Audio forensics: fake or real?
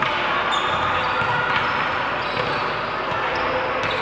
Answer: real